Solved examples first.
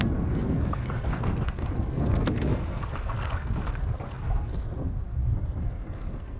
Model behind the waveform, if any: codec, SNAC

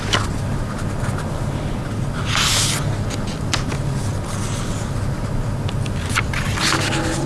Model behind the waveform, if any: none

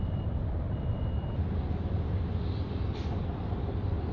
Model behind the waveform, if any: none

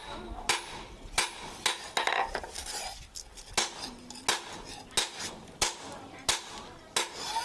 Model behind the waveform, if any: none